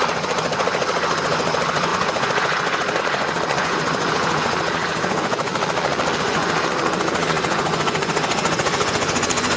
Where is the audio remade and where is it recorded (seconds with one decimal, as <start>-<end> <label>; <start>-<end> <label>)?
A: 0.0-5.5 remade; 5.5-6.2 recorded; 6.2-9.6 remade

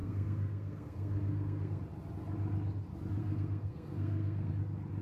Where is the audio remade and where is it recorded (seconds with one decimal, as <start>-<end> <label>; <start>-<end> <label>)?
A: 0.0-1.8 remade; 1.8-3.2 recorded; 3.2-4.5 remade; 4.5-5.0 recorded

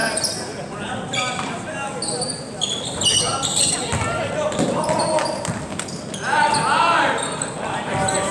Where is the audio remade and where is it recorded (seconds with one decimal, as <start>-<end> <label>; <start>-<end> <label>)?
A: 0.0-8.3 recorded